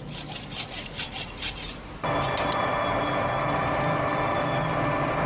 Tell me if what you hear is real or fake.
real